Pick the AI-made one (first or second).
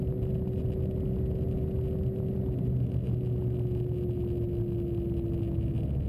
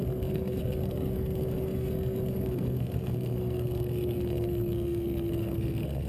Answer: second